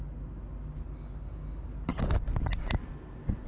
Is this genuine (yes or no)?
yes